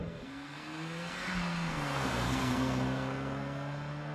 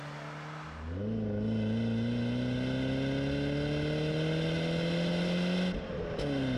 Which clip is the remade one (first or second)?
first